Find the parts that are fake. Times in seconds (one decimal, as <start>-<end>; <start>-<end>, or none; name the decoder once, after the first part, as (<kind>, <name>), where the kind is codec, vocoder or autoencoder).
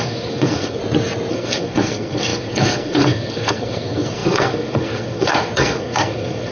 0.0-0.8 (codec, SNAC); 1.3-6.5